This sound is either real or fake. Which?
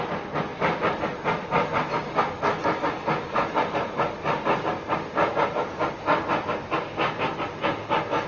real